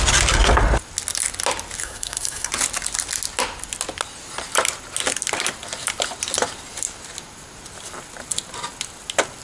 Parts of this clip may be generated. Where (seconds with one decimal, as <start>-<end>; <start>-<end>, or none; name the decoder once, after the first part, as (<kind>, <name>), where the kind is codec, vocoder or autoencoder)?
1.8-2.5 (codec, SNAC)

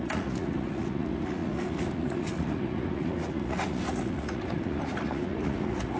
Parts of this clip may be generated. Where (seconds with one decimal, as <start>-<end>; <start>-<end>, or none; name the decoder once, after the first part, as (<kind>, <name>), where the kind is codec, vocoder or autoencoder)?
0.0-6.0 (vocoder, Vocos)